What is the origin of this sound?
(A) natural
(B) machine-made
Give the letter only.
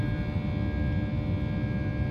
A